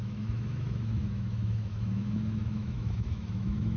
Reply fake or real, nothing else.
fake